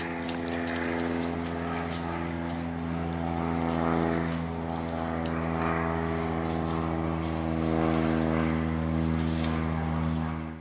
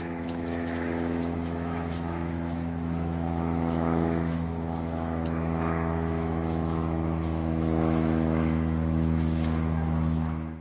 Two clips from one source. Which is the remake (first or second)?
second